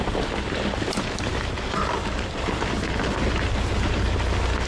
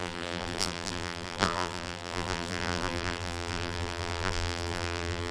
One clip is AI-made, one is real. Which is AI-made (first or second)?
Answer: second